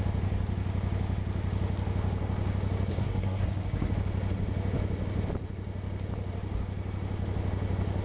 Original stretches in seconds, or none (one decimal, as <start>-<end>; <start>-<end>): 0.0-2.9; 3.9-8.0